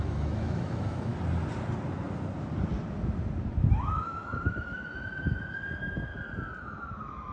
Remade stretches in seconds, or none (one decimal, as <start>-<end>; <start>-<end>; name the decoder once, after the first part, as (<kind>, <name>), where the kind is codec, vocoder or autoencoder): 0.0-1.1 (autoencoder, DAC-VAE); 3.7-6.1; 6.6-7.3